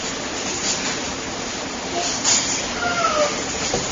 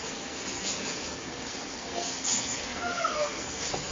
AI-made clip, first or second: second